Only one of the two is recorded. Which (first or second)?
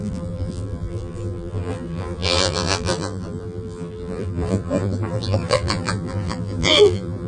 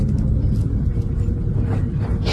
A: second